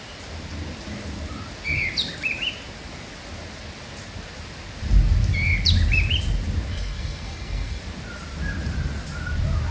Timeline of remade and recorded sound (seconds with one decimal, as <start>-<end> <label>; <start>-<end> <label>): 0.0-6.7 recorded; 6.7-7.8 remade; 7.8-9.7 recorded